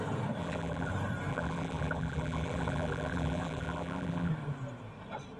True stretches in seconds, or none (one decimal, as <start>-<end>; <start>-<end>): 0.0-0.4; 0.9-1.3; 4.3-5.4